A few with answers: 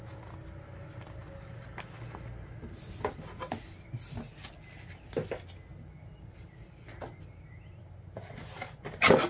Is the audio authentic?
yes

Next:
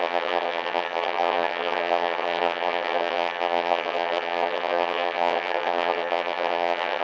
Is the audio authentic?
no